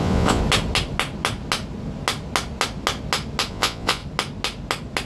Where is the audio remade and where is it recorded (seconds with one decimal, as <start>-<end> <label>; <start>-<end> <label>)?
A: 0.0-0.4 remade; 0.4-3.5 recorded; 3.5-4.0 remade; 4.0-5.1 recorded